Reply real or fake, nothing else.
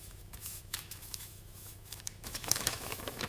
fake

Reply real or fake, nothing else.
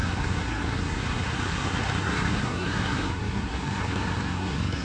fake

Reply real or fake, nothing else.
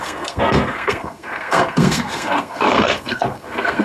fake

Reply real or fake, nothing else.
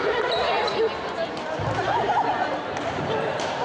real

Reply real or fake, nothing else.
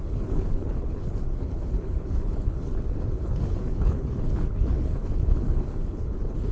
fake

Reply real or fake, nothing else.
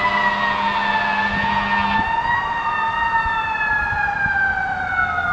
real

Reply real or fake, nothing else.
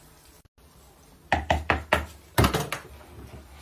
real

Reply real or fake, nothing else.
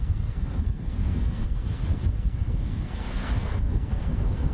fake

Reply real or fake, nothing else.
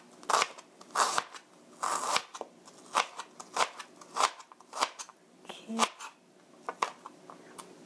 real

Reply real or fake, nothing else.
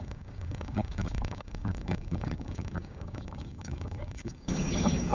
fake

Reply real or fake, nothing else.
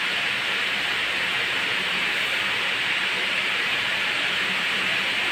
fake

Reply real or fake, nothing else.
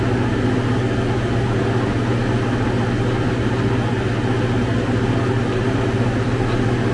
real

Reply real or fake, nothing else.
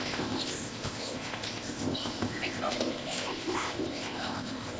fake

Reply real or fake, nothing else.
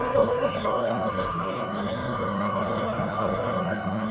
fake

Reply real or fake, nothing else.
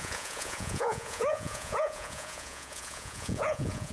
fake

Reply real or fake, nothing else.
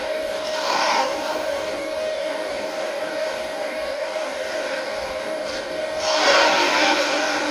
fake